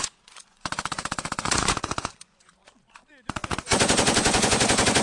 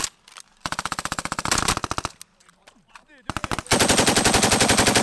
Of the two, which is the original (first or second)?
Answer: second